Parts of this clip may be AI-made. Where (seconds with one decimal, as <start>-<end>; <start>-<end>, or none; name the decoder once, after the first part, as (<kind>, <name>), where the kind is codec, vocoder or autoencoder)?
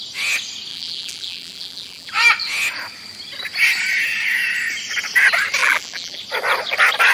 0.7-2.1 (vocoder, BigVGAN v2); 5.6-6.2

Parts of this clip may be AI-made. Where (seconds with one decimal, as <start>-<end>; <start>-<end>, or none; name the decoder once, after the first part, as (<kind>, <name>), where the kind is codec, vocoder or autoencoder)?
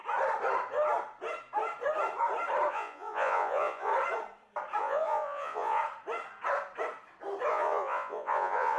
2.7-3.9 (vocoder, Vocos); 4.8-5.8; 7.5-8.8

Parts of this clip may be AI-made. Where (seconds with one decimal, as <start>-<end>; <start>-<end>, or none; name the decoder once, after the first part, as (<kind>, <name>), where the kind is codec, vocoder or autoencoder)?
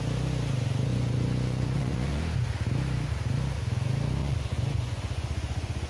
0.9-2.2 (vocoder, Vocos); 4.2-5.9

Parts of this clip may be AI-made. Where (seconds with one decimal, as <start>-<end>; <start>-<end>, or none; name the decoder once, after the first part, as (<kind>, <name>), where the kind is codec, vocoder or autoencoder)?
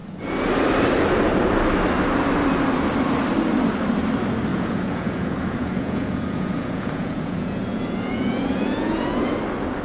4.5-9.3 (vocoder, Vocos)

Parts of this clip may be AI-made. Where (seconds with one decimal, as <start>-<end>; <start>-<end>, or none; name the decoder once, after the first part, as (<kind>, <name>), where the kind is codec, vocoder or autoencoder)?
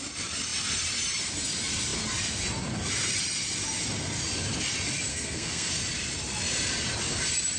5.1-5.7 (codec, SNAC)